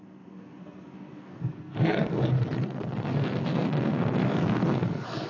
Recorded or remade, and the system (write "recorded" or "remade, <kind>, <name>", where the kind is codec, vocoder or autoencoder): remade, codec, SNAC